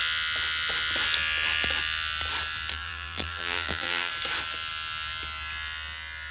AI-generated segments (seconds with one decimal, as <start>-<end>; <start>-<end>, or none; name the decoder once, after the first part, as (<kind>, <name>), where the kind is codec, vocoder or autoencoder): 2.7-4.1 (vocoder, BigVGAN v2)